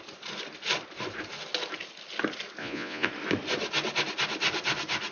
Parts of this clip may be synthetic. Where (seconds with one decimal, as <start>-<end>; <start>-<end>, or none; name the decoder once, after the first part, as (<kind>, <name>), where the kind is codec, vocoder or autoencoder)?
2.6-3.1 (vocoder, Vocos)